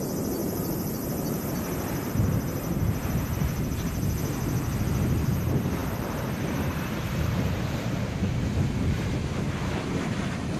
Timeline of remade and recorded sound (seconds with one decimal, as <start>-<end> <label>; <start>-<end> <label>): 0.0-0.4 recorded; 0.4-2.1 remade; 2.1-5.8 recorded; 5.8-10.2 remade; 10.2-10.6 recorded